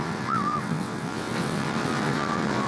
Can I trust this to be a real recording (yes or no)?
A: no